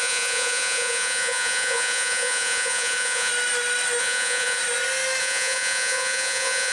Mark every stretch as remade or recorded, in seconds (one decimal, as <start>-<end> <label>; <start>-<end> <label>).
0.0-3.3 remade; 3.3-4.0 recorded; 4.0-4.6 remade; 4.6-5.2 recorded; 5.2-6.7 remade